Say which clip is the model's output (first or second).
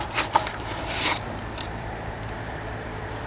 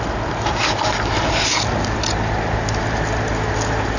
first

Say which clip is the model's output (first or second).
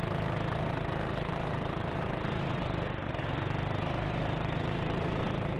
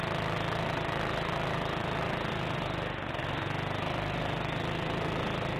first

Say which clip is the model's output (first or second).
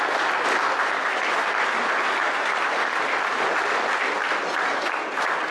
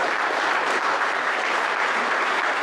second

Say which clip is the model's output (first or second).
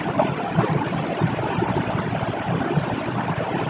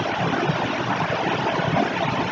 first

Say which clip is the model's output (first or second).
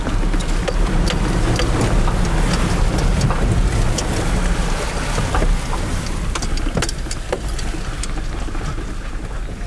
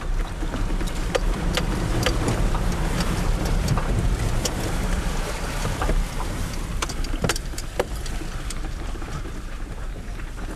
second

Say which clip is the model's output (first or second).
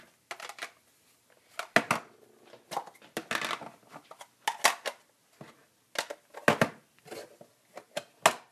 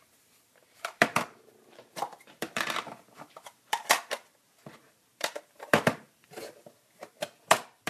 second